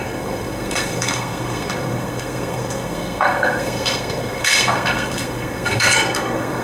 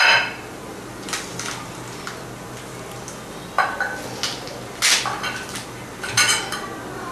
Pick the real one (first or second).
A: second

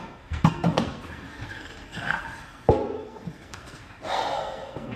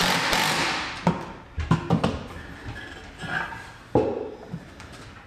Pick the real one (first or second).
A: second